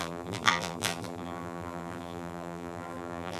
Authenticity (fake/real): fake